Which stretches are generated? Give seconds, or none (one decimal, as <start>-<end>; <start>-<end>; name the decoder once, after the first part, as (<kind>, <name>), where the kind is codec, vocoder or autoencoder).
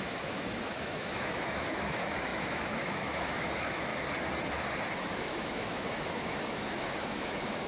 0.0-3.9 (autoencoder, DAC-VAE); 5.1-7.7